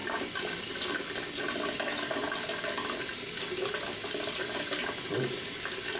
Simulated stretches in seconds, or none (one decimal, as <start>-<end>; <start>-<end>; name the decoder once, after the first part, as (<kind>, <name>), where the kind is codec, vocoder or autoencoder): none